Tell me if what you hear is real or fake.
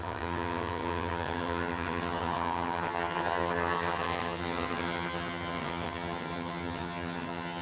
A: fake